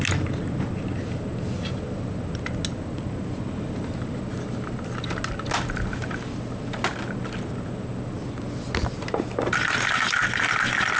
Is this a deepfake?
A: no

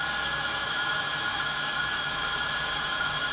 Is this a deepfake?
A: yes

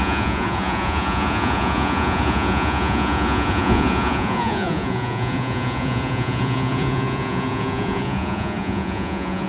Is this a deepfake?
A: yes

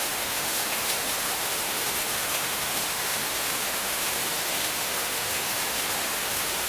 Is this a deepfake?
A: yes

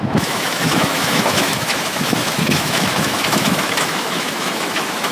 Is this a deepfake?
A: yes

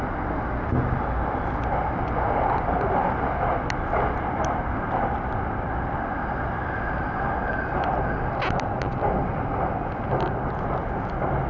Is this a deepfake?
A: no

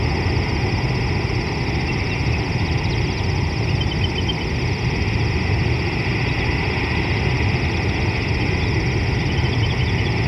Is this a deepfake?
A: no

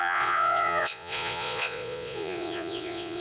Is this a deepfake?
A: yes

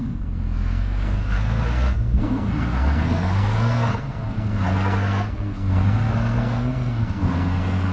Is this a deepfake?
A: yes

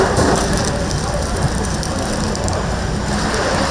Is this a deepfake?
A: no